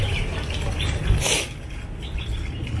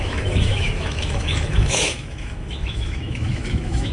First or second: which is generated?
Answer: second